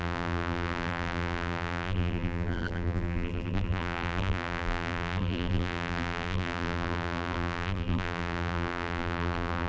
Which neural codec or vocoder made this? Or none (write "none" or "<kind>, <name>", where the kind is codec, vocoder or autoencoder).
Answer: vocoder, BigVGAN v2